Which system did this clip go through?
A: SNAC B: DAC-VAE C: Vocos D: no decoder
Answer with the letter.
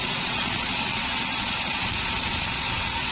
C